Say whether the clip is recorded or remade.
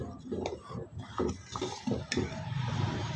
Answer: remade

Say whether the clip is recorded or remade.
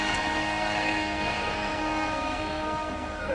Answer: remade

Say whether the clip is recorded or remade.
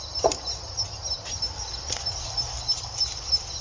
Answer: recorded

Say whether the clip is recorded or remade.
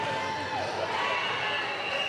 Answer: recorded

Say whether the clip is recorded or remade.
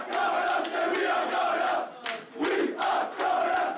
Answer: recorded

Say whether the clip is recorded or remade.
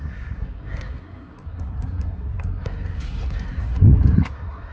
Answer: remade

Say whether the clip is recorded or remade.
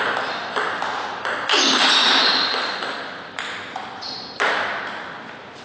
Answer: recorded